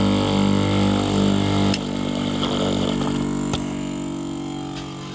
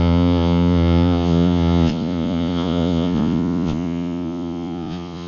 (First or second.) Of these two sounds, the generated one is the second